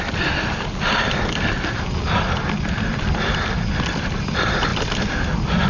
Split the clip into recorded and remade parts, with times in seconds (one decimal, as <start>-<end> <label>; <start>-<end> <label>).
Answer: 0.0-5.7 recorded